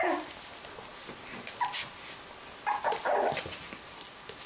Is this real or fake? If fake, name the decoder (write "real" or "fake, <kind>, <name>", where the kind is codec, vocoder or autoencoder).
real